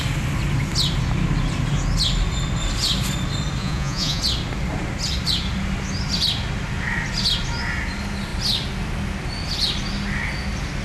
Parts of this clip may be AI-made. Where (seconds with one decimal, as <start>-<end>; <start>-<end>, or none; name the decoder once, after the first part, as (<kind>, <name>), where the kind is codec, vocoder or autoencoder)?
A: 3.6-4.2 (vocoder, Vocos)

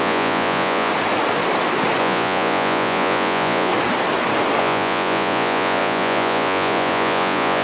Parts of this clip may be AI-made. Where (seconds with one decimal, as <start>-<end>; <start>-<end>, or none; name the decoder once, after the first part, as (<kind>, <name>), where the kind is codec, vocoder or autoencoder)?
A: 0.0-0.9 (vocoder, Vocos); 2.0-3.7; 4.6-7.6

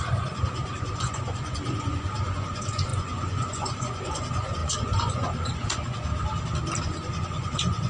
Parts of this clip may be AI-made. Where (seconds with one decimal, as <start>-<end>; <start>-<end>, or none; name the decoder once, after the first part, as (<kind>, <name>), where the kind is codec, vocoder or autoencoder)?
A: 0.0-6.1 (vocoder, Vocos); 6.8-7.9